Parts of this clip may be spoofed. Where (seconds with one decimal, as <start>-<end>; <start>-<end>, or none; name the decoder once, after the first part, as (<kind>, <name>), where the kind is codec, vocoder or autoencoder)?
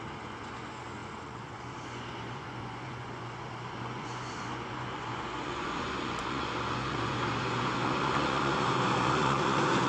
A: 0.0-9.9 (vocoder, Vocos)